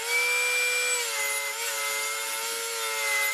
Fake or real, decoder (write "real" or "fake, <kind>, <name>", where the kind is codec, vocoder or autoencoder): real